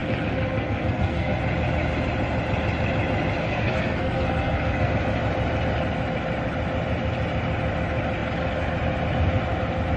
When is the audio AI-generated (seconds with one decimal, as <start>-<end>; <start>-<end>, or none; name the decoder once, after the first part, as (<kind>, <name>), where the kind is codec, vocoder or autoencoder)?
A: 0.0-1.4 (codec, SNAC); 3.4-4.9